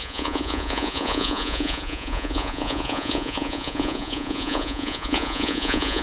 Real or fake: fake